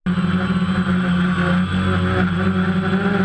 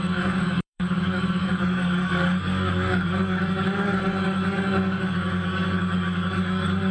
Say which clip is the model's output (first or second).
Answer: second